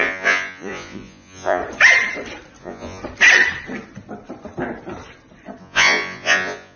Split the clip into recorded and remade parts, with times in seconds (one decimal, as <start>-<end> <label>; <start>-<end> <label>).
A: 0.0-1.6 remade; 1.6-2.6 recorded; 2.6-3.0 remade; 3.0-5.6 recorded; 5.6-6.8 remade